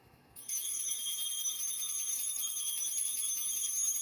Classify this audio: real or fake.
fake